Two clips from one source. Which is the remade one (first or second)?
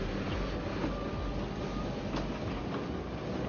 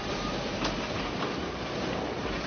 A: second